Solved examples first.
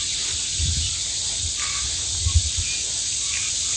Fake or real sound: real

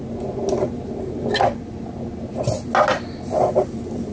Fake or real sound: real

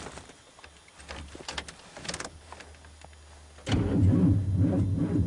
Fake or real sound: real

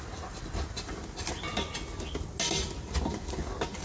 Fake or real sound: real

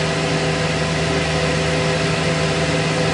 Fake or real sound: real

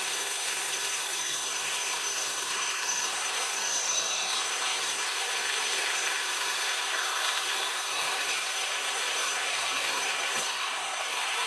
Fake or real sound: fake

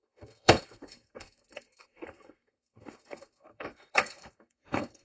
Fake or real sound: fake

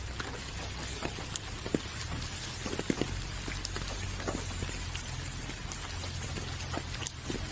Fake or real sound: real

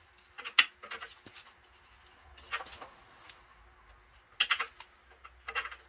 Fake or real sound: real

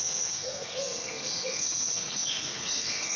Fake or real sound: fake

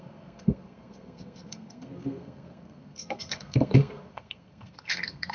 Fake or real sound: fake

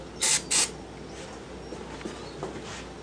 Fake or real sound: real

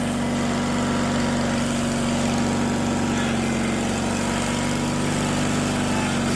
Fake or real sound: real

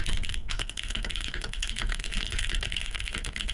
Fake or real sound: fake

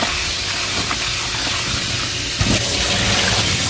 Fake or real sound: real